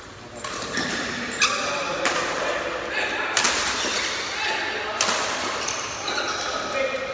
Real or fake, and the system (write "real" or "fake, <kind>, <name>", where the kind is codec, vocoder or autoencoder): real